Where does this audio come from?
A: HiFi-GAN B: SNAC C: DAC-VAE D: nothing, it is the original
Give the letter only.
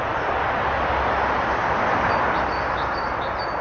D